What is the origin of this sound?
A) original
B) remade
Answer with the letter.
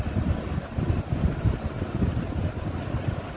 A